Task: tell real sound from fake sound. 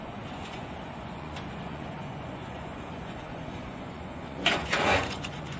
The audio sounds fake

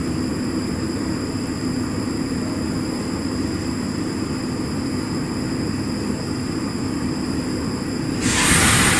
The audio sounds real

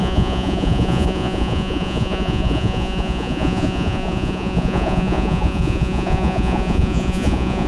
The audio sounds fake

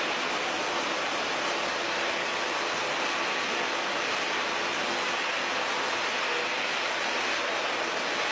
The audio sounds real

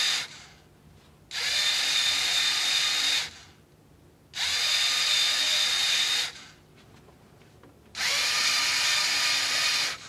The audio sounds real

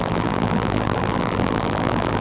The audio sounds fake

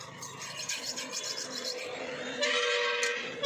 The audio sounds real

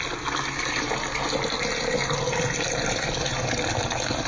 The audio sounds real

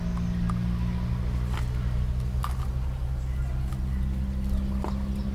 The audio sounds real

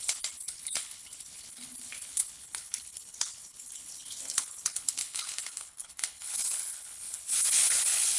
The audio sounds fake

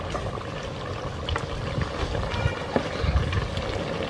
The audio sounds real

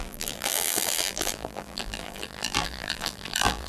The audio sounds fake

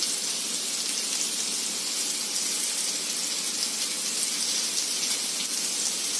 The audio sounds real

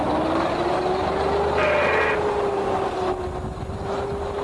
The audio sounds real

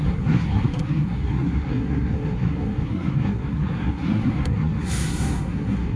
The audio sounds fake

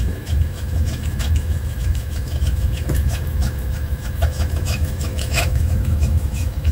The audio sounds fake